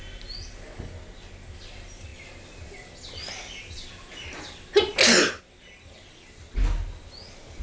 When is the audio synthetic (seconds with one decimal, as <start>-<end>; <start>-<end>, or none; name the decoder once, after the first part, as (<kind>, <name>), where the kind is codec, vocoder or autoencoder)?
none

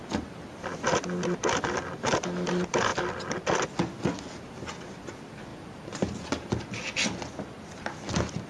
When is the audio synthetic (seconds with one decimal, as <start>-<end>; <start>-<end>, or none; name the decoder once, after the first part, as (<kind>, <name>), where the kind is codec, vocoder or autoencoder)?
5.5-6.5 (vocoder, BigVGAN v2)

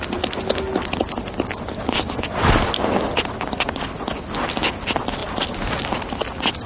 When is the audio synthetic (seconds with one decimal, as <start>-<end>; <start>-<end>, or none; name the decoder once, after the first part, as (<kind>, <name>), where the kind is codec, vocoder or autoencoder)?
none

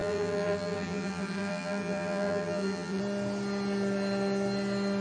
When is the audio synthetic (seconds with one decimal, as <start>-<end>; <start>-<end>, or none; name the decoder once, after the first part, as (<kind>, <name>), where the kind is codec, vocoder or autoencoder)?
0.0-3.0 (vocoder, BigVGAN v2)

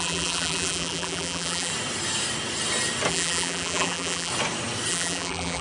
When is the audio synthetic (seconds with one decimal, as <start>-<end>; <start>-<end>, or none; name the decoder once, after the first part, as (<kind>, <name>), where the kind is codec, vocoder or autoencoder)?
0.0-1.7 (vocoder, BigVGAN v2); 3.1-4.3; 4.9-5.6